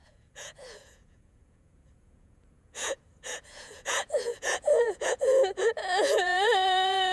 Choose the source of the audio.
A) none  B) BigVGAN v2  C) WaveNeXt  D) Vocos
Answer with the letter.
D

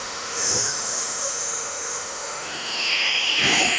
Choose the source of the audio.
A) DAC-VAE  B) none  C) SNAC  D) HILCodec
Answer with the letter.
A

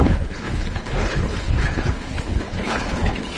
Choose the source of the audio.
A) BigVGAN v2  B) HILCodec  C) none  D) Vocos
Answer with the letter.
B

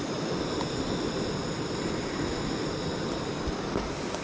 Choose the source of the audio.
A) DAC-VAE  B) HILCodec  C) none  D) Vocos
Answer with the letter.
C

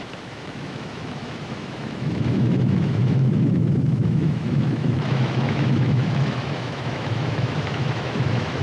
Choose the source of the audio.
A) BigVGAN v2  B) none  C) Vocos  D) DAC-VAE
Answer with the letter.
D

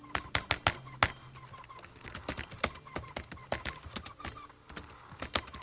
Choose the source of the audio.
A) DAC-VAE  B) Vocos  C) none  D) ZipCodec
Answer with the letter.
C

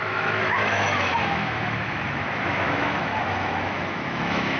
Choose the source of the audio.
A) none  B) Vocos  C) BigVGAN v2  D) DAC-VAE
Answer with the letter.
D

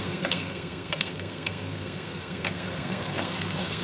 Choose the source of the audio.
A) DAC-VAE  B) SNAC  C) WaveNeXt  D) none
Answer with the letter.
B